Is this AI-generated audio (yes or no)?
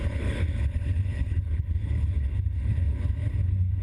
yes